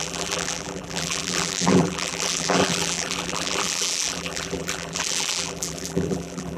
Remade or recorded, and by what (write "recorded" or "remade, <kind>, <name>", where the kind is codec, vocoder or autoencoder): remade, vocoder, BigVGAN v2